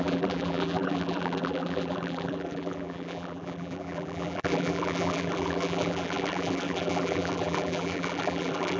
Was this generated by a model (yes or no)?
yes